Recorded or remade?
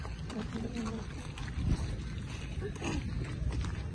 recorded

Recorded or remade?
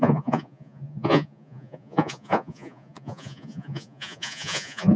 remade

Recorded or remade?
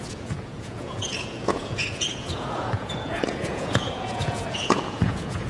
remade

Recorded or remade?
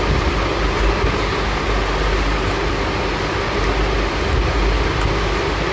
recorded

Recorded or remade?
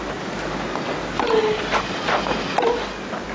recorded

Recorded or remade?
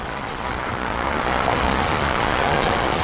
remade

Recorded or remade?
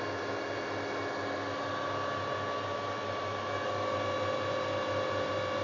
recorded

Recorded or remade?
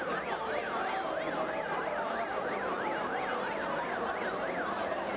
recorded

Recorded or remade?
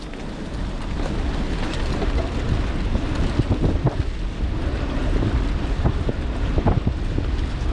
recorded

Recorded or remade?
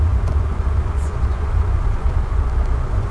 remade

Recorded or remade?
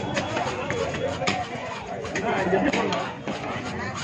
remade